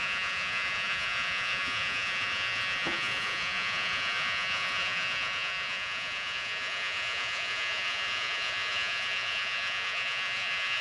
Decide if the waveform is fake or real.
fake